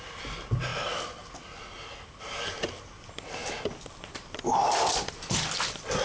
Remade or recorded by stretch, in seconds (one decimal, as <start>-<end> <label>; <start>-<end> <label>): 0.0-6.0 recorded